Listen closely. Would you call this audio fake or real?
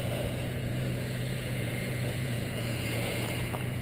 fake